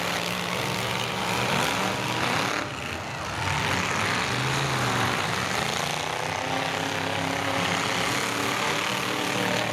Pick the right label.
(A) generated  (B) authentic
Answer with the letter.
B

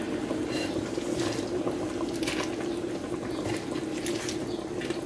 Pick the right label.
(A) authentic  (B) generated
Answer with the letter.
A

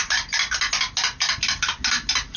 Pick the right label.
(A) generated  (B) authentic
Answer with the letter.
B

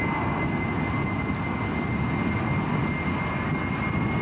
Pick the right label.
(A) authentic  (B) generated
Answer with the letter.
A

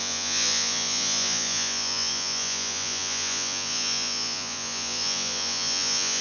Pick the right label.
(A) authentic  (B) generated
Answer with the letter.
B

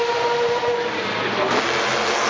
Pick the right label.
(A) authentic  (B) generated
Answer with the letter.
A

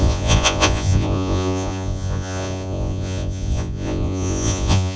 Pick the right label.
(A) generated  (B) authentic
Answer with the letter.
A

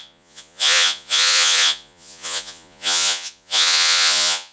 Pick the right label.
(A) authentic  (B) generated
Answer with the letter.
B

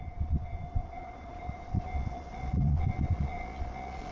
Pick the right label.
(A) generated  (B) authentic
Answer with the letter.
A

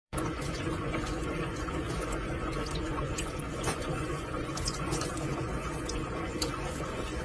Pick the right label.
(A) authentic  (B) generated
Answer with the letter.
B